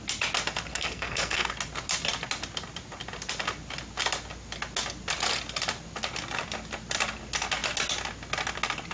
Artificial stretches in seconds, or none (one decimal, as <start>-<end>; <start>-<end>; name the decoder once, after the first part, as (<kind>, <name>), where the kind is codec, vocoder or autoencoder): 0.7-1.5 (codec, SNAC)